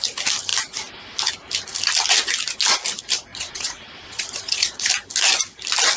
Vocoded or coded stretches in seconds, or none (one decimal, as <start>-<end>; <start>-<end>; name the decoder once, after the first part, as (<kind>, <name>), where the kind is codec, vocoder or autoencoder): 3.3-4.9 (vocoder, Vocos)